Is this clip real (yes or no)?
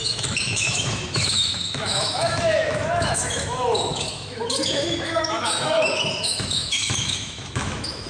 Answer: no